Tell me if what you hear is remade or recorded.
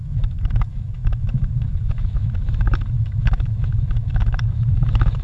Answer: remade